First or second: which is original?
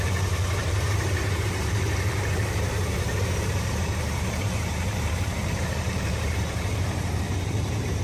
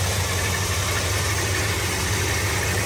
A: second